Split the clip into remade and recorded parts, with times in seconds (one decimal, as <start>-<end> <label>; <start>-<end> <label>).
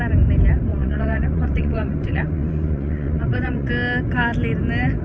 0.0-0.7 recorded; 0.7-3.7 remade; 3.7-5.0 recorded